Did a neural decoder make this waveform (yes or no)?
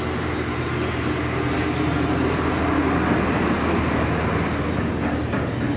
no